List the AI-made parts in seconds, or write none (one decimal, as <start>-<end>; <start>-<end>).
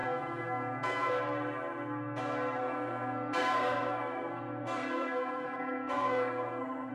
0.0-1.1; 2.6-6.9